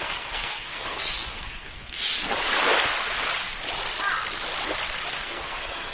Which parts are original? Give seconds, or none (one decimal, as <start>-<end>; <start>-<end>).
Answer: 2.0-5.1